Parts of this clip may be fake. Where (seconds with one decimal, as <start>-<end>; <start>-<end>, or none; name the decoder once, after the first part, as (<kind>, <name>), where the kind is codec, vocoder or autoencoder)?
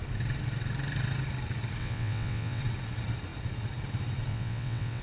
1.8-2.6 (vocoder, WaveNeXt); 4.3-5.0